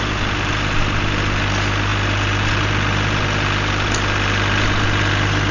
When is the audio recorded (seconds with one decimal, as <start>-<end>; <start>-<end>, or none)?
0.0-5.5